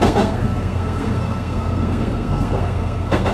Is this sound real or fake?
fake